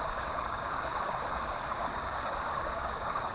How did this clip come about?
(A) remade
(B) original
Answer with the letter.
A